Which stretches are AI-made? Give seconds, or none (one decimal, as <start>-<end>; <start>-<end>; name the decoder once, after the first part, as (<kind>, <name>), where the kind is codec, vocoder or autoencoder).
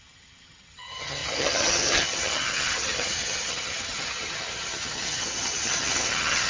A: 0.0-6.5 (vocoder, HiFi-GAN)